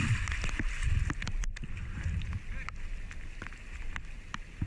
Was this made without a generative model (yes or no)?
yes